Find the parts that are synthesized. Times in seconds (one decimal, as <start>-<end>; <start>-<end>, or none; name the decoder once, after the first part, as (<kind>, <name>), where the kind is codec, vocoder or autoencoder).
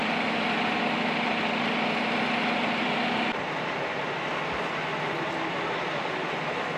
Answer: none